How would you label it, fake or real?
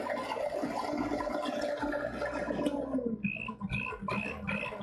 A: real